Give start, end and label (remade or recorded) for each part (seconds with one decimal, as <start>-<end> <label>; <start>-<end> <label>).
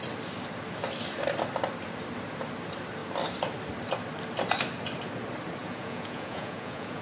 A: 0.0-5.6 recorded; 5.6-7.0 remade